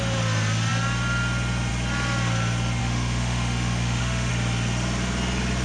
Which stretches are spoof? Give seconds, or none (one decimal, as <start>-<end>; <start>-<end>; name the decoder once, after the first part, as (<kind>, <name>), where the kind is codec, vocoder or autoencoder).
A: 2.8-4.3 (autoencoder, DAC-VAE)